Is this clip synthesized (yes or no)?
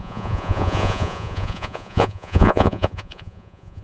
yes